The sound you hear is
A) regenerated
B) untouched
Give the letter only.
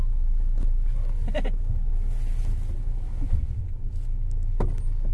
B